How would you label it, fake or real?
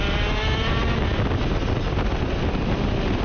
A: real